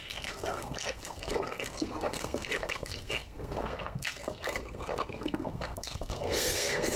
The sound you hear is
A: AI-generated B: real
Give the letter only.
A